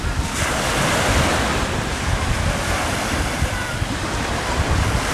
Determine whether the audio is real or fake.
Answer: real